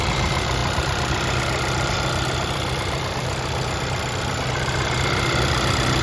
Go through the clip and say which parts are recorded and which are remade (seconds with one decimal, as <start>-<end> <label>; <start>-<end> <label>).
0.0-6.0 recorded